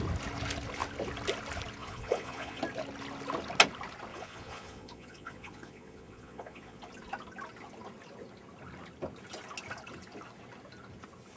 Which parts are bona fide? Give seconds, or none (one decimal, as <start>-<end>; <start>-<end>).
0.0-1.8; 2.6-4.1; 6.8-11.4